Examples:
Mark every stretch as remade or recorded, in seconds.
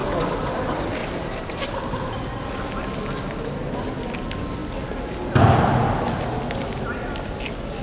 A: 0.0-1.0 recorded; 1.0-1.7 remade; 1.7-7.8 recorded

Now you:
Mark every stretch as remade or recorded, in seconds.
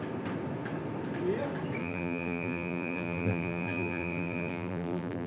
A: 0.0-1.8 recorded; 1.8-5.3 remade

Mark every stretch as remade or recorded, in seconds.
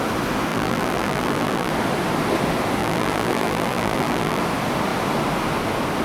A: 0.0-0.5 recorded; 0.5-1.7 remade; 1.7-2.8 recorded; 2.8-4.4 remade; 4.4-6.0 recorded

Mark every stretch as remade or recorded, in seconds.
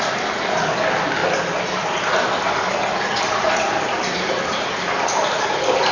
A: 0.0-5.9 recorded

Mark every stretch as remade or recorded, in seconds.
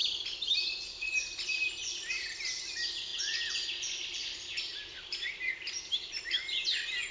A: 0.0-3.1 remade; 3.1-3.8 recorded; 3.8-7.1 remade